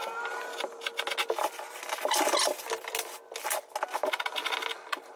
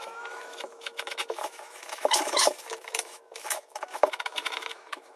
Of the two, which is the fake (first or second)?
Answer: second